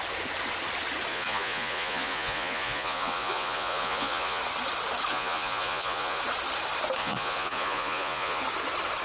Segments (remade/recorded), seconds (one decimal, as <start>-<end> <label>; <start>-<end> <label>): 0.0-1.1 recorded; 1.1-4.4 remade; 4.4-5.1 recorded; 5.1-6.2 remade; 6.2-7.0 recorded; 7.0-8.4 remade; 8.4-9.0 recorded